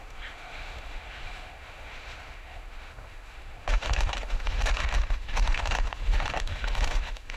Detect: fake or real fake